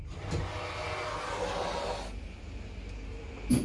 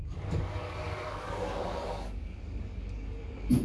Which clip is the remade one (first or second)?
second